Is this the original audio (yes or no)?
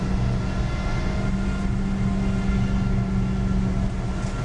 yes